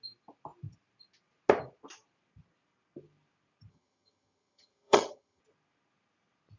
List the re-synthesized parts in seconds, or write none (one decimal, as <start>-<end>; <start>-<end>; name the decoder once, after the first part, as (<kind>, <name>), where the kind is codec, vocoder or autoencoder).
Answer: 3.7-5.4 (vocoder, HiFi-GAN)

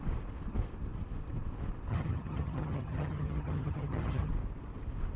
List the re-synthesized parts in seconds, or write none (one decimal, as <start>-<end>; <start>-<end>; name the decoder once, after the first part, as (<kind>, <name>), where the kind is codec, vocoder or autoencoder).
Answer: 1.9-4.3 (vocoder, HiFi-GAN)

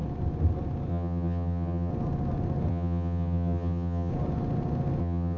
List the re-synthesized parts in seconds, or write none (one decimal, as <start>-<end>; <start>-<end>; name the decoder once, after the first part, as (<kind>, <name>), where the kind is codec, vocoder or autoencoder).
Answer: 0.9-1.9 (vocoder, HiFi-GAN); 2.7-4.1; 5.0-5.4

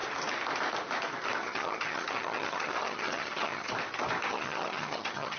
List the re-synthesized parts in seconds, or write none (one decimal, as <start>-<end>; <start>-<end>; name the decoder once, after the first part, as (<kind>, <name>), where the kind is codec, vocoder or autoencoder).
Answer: 1.4-3.7 (vocoder, HiFi-GAN); 4.3-5.4

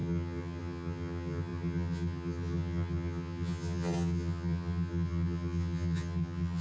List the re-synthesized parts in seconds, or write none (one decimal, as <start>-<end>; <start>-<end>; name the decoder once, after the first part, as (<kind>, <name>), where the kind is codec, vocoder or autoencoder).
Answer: 0.0-6.6 (vocoder, HiFi-GAN)